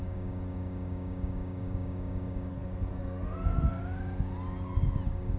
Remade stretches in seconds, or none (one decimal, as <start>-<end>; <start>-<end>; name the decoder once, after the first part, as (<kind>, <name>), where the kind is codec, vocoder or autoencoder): 2.5-3.8 (codec, SNAC)